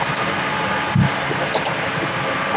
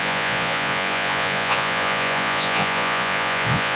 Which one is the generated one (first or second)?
second